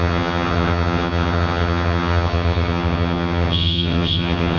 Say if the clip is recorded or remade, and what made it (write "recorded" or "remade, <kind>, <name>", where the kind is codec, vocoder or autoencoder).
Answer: remade, vocoder, HiFi-GAN